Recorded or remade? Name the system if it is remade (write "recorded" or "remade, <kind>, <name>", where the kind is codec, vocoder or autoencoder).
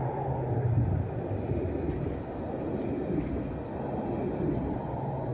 recorded